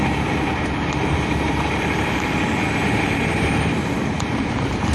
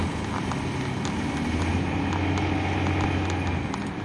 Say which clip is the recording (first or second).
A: second